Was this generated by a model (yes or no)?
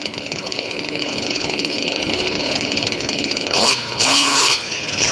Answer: yes